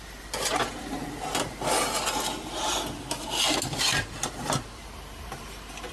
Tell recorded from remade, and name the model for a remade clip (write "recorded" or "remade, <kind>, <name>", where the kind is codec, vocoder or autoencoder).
recorded